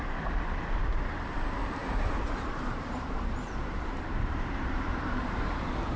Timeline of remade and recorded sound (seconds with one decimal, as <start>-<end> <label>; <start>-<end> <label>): 0.0-1.8 recorded; 1.8-5.4 remade; 5.4-6.0 recorded